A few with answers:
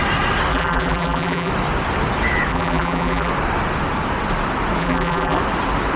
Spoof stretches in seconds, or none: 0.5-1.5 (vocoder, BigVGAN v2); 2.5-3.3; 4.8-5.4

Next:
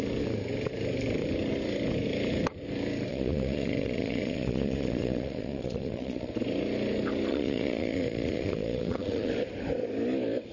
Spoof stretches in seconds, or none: 3.1-6.3 (vocoder, Vocos); 7.3-9.3

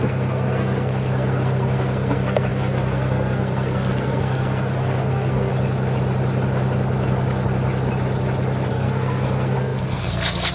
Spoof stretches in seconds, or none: 0.0-5.5 (codec, SNAC); 8.7-10.5

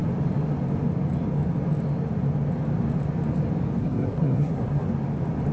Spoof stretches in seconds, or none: 3.8-4.9 (codec, SNAC)

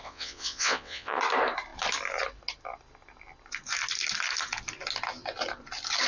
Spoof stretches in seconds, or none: 0.0-1.2 (vocoder, WaveNeXt)

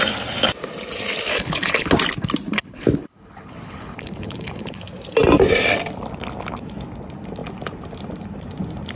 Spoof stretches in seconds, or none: 1.3-1.9 (codec, HILCodec); 2.5-4.8

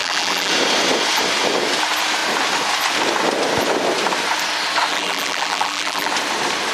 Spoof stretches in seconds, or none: 0.0-0.5 (vocoder, BigVGAN v2); 4.9-6.1

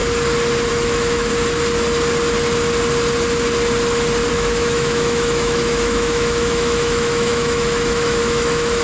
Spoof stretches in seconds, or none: 0.7-1.3 (autoencoder, DAC-VAE); 4.3-8.8